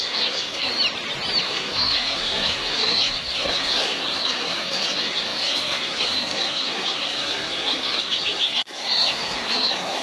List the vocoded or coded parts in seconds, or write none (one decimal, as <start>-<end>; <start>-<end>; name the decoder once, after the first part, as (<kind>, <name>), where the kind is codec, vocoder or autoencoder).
0.0-0.7 (codec, SNAC); 1.4-10.0